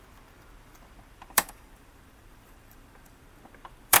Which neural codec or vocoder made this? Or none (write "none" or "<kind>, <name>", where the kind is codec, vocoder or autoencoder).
vocoder, BigVGAN v2